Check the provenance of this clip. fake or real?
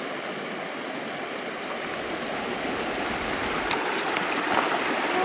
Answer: real